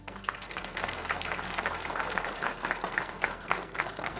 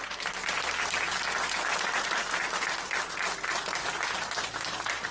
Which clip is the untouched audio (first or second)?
second